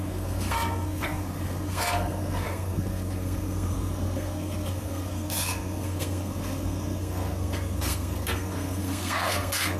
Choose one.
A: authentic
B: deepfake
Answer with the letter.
B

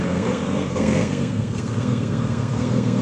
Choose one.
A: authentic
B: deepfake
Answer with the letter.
B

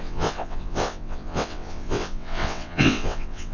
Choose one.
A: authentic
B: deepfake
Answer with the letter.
B